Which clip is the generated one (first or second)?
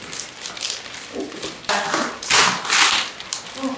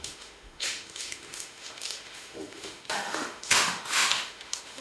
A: second